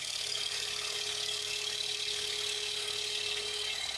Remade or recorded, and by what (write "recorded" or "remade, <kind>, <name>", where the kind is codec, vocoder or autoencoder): remade, codec, DAC